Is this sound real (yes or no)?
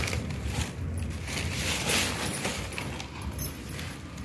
yes